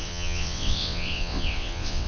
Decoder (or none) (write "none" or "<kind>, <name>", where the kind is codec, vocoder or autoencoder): vocoder, WaveNeXt